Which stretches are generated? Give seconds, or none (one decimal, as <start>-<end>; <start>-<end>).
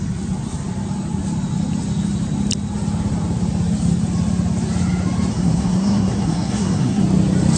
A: 5.3-7.0